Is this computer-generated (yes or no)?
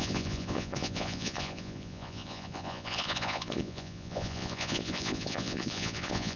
yes